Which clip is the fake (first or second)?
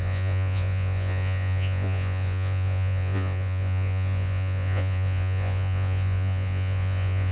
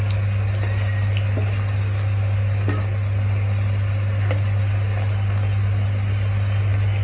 first